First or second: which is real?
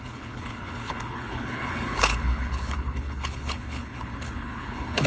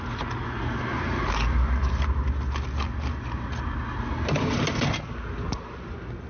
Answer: second